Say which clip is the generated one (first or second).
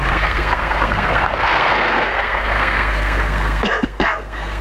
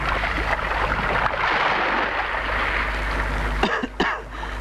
first